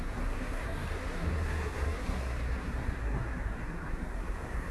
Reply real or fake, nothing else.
fake